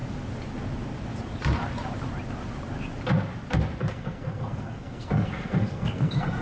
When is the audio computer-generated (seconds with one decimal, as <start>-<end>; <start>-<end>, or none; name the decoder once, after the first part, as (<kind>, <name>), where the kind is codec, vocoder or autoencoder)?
3.8-6.4 (codec, SNAC)